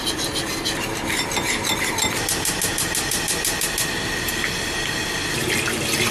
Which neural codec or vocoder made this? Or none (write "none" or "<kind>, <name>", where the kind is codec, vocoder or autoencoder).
vocoder, BigVGAN v2